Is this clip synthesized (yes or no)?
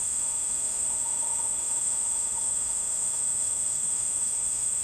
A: yes